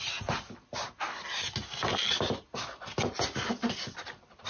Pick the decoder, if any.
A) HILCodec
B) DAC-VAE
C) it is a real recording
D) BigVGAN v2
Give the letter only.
C